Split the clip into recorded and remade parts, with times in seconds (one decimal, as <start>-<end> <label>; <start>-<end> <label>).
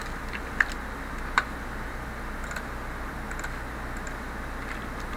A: 0.0-5.2 recorded